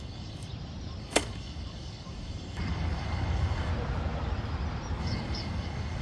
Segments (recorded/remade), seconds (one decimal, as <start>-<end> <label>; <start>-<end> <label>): 0.0-0.5 remade; 0.5-1.0 recorded; 1.0-3.7 remade; 3.7-5.0 recorded; 5.0-6.0 remade